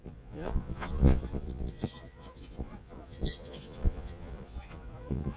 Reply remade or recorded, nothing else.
remade